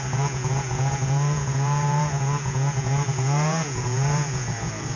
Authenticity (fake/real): fake